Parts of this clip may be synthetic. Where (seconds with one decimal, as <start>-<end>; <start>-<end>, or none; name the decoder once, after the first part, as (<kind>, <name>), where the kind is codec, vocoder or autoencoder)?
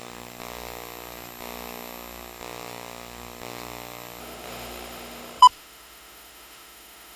4.2-7.2 (autoencoder, DAC-VAE)